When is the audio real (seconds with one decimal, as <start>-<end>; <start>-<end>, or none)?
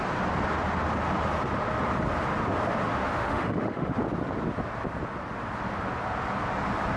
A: 0.0-2.9; 4.0-7.0